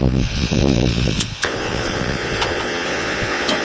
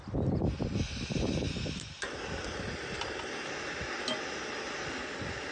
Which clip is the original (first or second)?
second